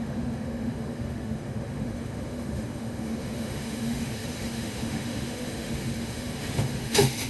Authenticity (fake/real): fake